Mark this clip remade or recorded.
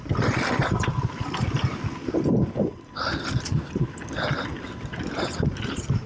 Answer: recorded